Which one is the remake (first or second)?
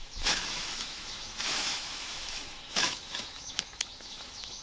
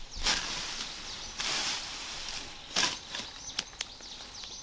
first